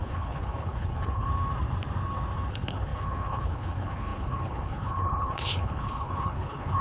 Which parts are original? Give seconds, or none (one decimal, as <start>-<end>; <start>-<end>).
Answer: 1.3-2.5